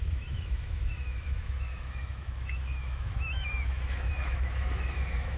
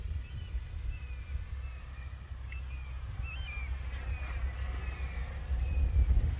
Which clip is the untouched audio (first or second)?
second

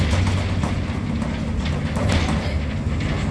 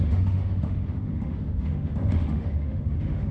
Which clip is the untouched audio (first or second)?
first